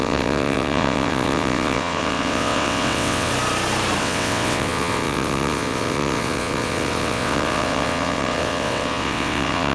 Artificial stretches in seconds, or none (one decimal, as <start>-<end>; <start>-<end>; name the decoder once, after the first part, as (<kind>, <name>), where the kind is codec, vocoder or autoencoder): 0.0-3.3 (vocoder, WaveNeXt); 4.0-9.7